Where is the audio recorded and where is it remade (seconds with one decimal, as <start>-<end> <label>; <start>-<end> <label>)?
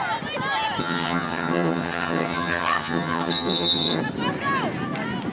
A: 0.0-0.8 recorded; 0.8-4.0 remade; 4.0-5.3 recorded